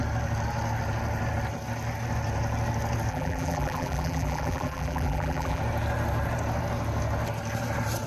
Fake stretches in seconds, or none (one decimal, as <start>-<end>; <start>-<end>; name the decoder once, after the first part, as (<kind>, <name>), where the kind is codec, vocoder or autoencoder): 3.1-5.6 (vocoder, BigVGAN v2)